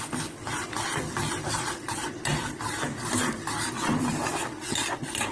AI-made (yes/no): no